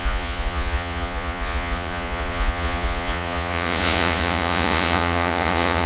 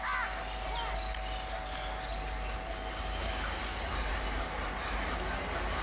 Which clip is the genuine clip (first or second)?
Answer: second